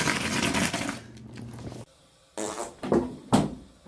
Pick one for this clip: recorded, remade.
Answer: recorded